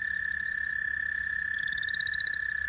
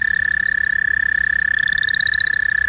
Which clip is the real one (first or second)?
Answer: second